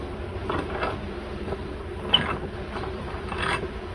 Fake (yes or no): no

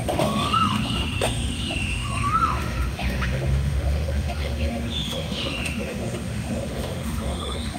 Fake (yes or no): yes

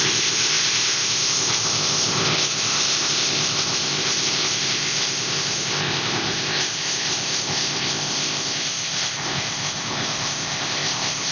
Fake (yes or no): yes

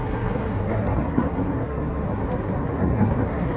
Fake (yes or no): yes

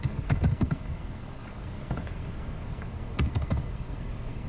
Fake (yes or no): yes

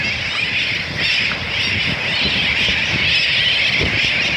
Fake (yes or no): no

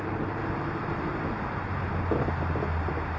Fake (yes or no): no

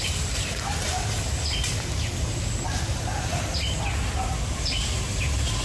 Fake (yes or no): no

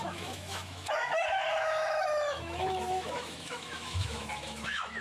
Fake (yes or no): yes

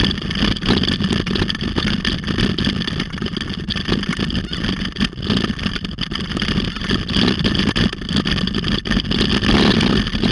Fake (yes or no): no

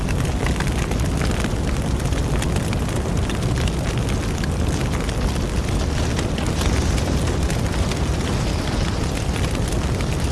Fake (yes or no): no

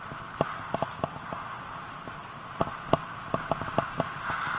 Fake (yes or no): no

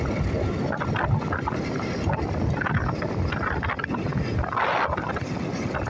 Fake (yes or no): no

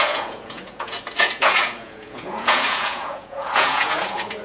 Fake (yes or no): yes